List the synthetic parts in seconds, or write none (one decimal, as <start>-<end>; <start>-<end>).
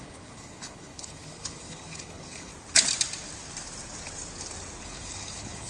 0.0-2.5; 4.8-5.7